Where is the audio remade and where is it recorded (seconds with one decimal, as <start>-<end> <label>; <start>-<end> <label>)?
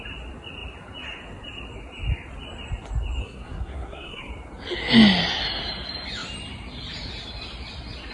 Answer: 0.0-3.2 recorded; 3.2-4.3 remade; 4.3-8.1 recorded